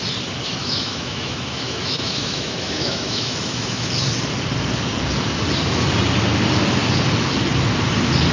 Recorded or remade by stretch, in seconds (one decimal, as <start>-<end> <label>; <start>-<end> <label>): 0.0-0.6 recorded; 0.6-3.9 remade; 3.9-8.3 recorded